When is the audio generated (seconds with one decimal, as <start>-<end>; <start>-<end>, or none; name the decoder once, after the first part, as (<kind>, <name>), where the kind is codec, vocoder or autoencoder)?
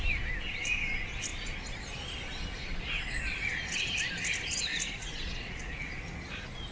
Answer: 4.7-5.8 (vocoder, Vocos)